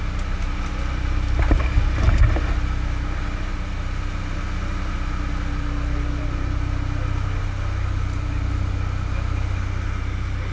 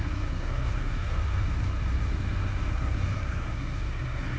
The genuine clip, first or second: first